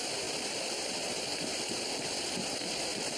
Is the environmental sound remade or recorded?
recorded